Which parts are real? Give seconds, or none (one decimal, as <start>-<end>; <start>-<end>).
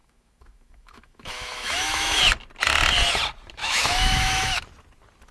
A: 2.2-3.6; 4.6-5.3